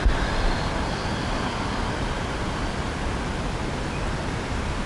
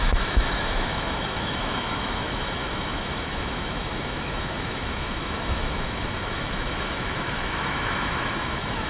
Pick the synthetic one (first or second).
second